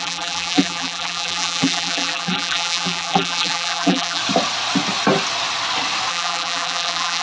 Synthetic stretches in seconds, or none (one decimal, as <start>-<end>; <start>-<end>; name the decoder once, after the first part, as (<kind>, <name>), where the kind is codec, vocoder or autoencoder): 0.0-4.2 (vocoder, BigVGAN v2); 6.1-7.2